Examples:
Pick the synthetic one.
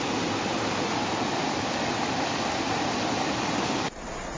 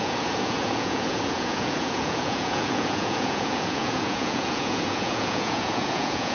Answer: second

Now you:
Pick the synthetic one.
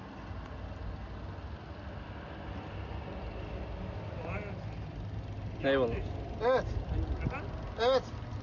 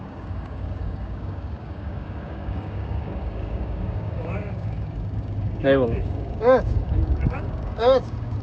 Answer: second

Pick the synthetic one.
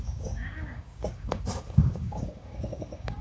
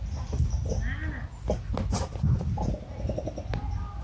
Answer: first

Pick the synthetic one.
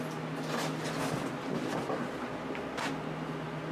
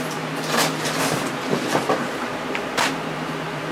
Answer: second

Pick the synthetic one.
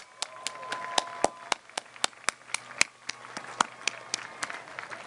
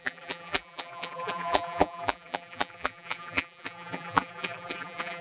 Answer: second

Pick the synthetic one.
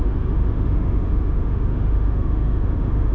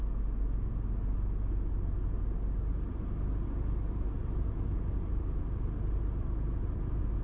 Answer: first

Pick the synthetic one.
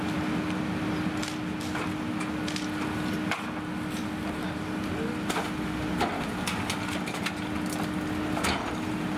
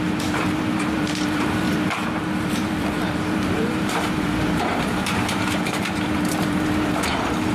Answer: second